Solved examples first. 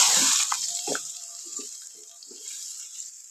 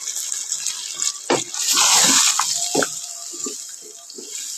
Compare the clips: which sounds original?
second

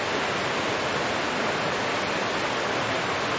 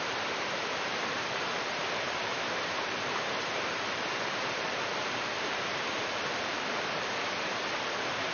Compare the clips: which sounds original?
first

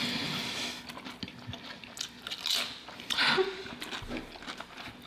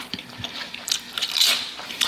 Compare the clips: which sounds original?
first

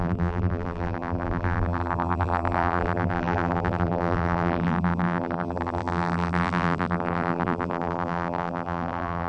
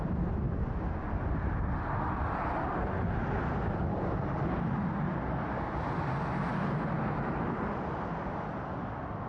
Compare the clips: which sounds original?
second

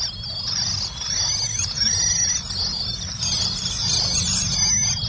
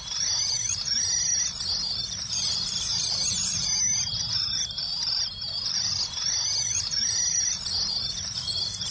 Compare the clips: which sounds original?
first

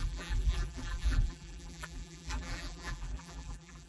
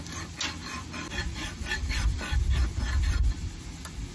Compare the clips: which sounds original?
second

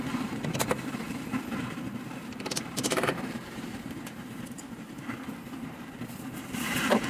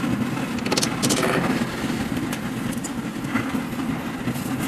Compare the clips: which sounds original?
second